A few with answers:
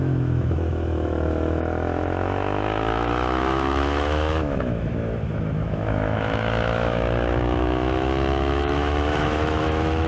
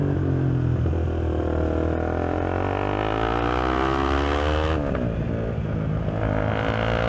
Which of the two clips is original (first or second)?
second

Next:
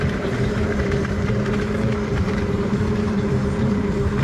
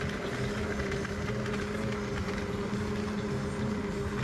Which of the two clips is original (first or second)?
second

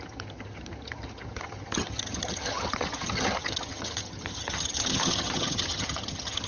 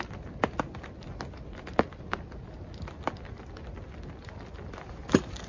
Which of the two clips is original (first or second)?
second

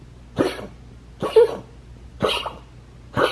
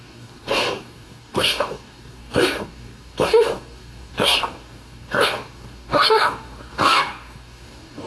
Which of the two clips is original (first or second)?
first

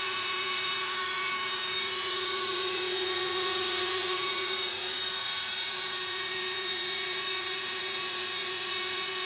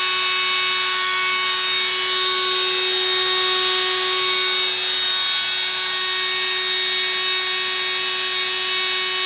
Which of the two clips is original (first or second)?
second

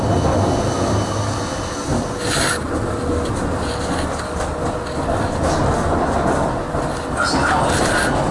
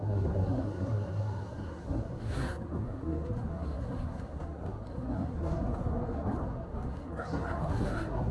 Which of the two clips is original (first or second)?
first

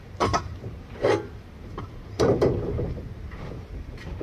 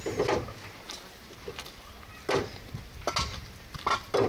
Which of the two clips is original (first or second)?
second